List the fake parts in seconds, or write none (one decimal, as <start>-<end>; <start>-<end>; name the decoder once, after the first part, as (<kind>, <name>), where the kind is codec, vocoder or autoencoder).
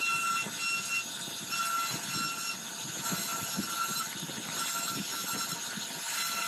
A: 3.3-4.3 (vocoder, BigVGAN v2)